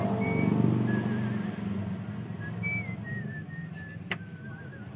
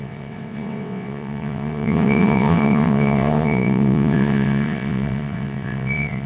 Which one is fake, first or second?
second